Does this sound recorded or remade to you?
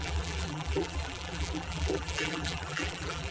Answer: remade